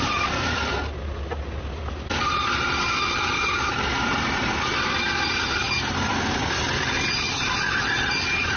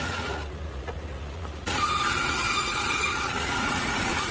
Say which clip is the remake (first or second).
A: second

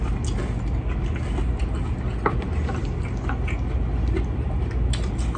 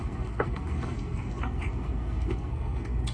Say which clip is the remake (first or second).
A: second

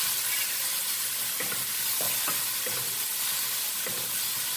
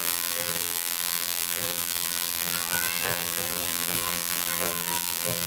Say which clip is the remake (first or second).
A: second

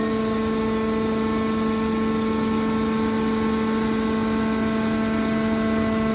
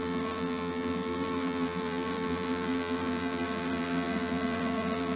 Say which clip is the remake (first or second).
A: second